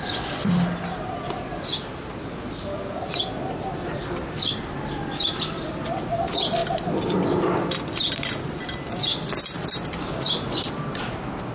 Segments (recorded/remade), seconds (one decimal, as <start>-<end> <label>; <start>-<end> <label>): 0.0-6.6 recorded; 6.6-7.7 remade; 7.7-9.1 recorded; 9.1-11.1 remade; 11.1-11.5 recorded